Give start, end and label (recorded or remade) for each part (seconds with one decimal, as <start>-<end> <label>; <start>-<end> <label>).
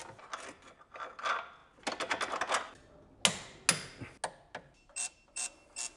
0.0-6.0 recorded